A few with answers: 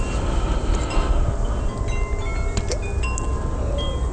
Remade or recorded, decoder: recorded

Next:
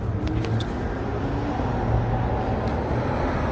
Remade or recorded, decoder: recorded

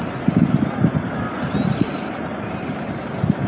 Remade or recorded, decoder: recorded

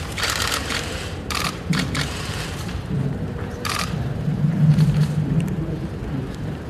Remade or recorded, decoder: remade, vocoder, BigVGAN v2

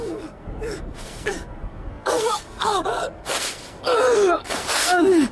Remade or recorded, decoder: remade, codec, SNAC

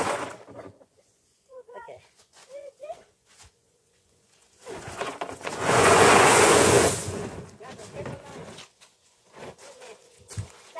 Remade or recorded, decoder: remade, vocoder, Vocos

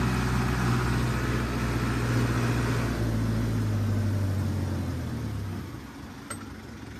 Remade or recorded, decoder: recorded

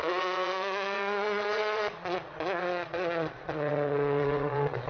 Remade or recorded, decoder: remade, vocoder, Vocos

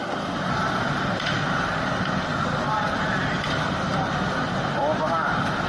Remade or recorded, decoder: recorded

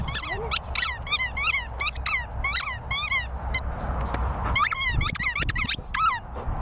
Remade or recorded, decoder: recorded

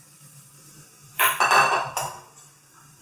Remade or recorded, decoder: remade, vocoder, BigVGAN v2